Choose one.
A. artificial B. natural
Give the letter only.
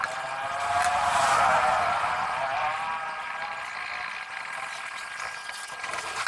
B